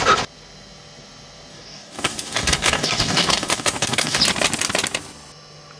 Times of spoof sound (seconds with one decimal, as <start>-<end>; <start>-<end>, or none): 1.5-4.2